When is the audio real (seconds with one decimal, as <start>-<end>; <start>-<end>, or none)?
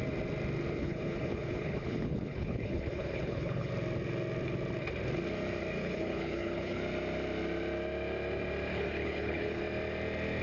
0.0-0.8; 3.7-5.8; 6.8-8.7; 9.6-10.4